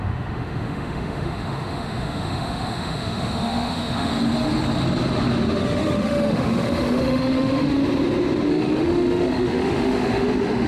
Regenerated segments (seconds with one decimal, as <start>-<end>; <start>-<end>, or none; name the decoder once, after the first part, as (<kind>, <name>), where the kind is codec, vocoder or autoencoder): 0.0-4.1 (autoencoder, DAC-VAE); 5.6-7.8; 8.5-10.7